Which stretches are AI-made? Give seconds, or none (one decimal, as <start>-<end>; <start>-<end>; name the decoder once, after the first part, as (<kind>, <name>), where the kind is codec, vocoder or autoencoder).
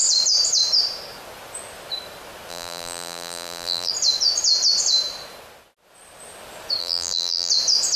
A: 2.5-3.9 (vocoder, BigVGAN v2); 6.8-7.5